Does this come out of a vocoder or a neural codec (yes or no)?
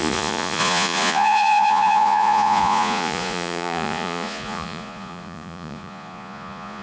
yes